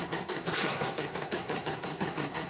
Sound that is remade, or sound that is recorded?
remade